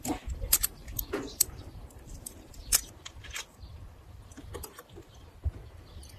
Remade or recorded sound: remade